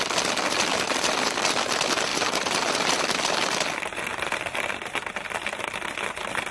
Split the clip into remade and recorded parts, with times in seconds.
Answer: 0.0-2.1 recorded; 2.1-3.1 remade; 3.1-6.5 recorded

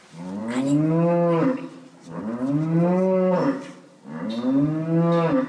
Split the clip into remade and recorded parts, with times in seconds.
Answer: 0.0-5.5 recorded

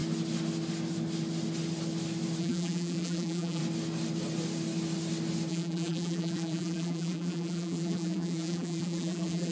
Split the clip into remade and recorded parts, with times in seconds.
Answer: 0.0-2.4 recorded; 2.4-3.6 remade; 3.6-5.5 recorded; 5.5-9.5 remade